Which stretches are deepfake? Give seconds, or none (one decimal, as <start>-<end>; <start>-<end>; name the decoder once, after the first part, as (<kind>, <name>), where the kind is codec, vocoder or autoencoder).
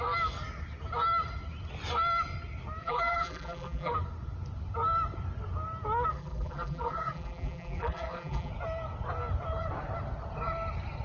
2.8-3.9 (vocoder, BigVGAN v2); 6.1-8.5